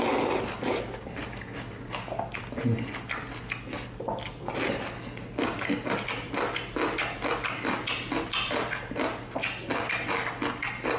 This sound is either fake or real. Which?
real